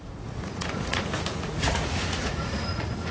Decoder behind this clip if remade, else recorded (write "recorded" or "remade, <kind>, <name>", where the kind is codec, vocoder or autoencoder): remade, vocoder, Vocos